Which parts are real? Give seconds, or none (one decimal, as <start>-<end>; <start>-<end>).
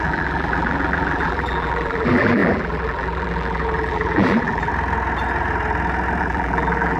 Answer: 4.7-6.2